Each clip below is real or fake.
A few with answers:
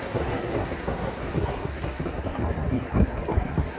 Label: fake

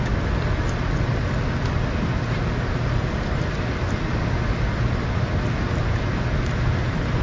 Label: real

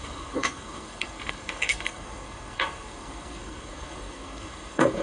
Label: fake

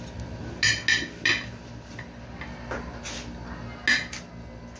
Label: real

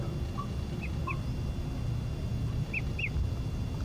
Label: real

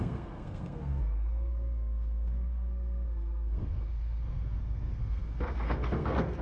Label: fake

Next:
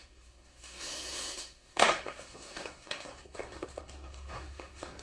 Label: fake